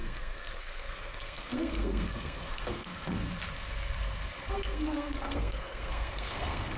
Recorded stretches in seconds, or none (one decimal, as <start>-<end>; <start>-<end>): 3.2-4.5